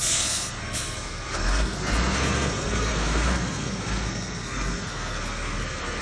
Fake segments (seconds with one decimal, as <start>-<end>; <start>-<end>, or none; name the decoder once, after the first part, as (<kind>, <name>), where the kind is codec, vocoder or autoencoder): 0.0-6.0 (codec, SNAC)